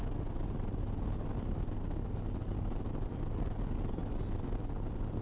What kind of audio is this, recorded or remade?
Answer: recorded